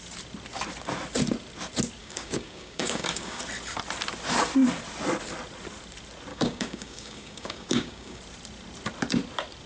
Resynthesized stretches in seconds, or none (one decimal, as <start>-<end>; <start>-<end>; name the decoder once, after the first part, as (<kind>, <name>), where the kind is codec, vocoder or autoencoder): 2.0-3.4 (codec, DAC); 6.3-8.2